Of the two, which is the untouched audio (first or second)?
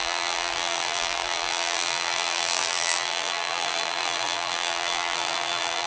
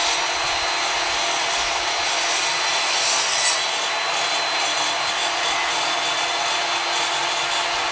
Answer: second